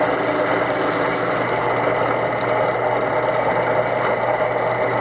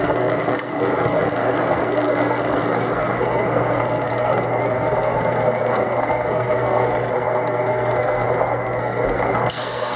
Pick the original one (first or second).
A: first